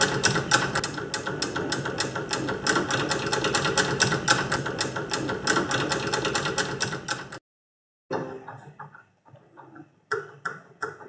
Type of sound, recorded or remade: recorded